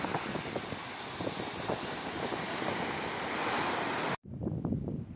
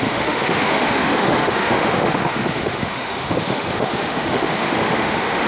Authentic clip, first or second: first